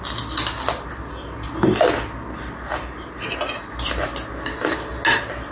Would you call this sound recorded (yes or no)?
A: yes